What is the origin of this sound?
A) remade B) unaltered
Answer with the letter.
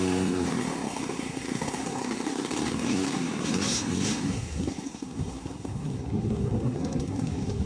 A